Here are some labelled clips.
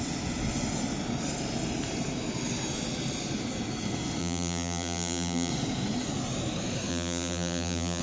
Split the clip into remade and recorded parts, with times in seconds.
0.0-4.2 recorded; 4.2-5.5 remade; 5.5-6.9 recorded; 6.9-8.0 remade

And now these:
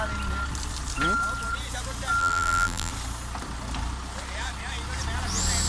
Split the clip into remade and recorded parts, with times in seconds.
0.0-2.2 recorded; 2.2-2.9 remade; 2.9-5.7 recorded